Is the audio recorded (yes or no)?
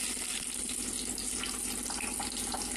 yes